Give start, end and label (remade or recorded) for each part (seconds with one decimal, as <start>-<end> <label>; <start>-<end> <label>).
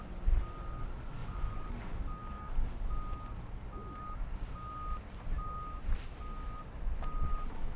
0.0-1.2 recorded; 1.2-2.0 remade; 2.0-7.8 recorded